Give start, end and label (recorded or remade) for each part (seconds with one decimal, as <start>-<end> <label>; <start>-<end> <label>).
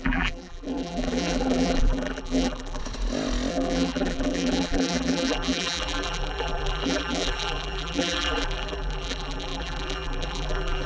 0.0-2.8 remade; 2.8-3.5 recorded; 3.5-10.9 remade